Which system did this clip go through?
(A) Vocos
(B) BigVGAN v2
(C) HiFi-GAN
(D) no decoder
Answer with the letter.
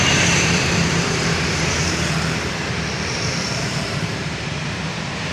B